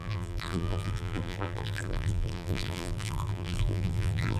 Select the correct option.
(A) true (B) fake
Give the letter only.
B